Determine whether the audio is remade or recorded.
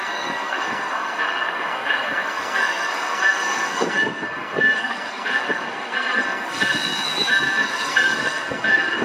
remade